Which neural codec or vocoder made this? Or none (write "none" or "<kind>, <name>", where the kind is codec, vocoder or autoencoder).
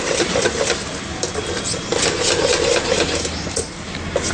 none